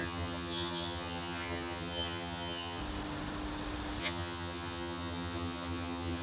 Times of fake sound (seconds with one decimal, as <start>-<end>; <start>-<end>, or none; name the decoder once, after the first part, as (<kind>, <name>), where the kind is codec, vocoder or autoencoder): 0.0-2.8 (vocoder, HiFi-GAN); 4.0-6.2